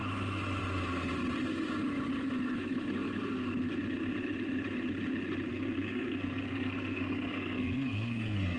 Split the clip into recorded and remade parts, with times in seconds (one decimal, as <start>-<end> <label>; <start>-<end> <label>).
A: 0.0-5.5 recorded; 5.5-8.6 remade